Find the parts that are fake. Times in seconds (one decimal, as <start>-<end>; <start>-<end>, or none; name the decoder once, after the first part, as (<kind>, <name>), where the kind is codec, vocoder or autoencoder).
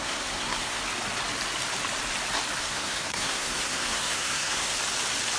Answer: 0.0-0.8 (codec, SNAC); 2.6-4.7